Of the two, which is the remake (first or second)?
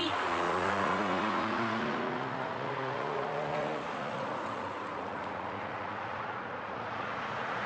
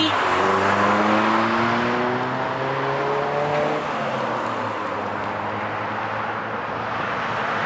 first